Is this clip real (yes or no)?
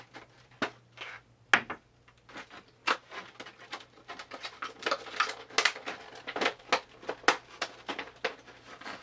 yes